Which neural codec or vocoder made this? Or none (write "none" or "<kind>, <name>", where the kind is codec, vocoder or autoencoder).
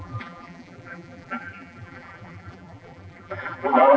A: vocoder, BigVGAN v2